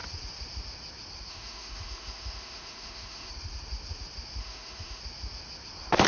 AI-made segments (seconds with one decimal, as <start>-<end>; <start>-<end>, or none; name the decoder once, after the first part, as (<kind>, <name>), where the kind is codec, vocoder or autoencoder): 1.3-3.3 (autoencoder, DAC-VAE); 4.4-5.0

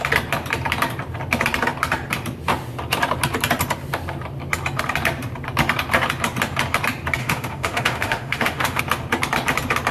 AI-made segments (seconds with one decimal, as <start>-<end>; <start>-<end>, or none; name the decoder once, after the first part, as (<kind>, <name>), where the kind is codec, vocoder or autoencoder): 7.2-8.8 (autoencoder, DAC-VAE)

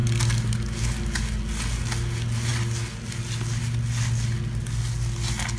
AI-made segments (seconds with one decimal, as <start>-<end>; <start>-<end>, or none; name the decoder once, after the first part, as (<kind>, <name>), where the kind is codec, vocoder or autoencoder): none

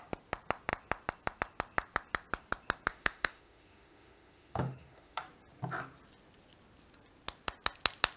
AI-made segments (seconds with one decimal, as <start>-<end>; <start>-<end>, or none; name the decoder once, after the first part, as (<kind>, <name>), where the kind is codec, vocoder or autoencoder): 2.9-5.2 (autoencoder, DAC-VAE)

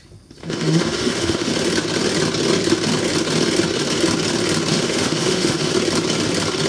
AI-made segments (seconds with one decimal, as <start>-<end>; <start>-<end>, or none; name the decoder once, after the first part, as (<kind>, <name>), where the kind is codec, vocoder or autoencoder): 0.4-1.5 (autoencoder, DAC-VAE); 4.7-5.7

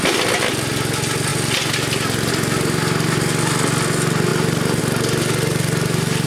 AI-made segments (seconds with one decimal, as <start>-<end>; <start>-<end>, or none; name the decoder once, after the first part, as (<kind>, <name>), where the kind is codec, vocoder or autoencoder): none

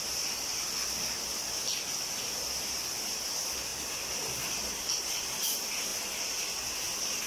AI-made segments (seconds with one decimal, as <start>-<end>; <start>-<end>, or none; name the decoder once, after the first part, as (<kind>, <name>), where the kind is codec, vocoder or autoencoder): none